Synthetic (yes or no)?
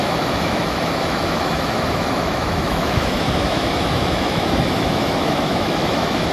yes